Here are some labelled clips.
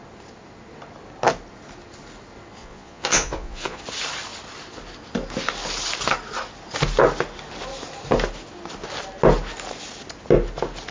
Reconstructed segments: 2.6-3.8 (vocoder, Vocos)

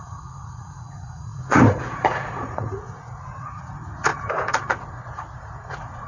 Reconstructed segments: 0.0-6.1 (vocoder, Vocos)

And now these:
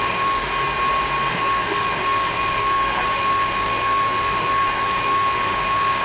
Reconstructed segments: 0.0-0.4 (autoencoder, DAC-VAE); 1.3-6.0